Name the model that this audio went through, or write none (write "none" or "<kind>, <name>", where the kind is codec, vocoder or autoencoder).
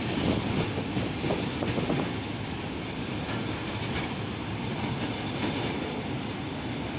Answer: none